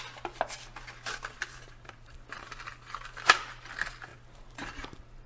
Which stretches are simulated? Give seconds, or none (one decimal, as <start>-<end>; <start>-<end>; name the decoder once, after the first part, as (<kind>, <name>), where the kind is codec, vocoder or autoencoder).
1.3-2.5 (vocoder, BigVGAN v2); 4.1-5.3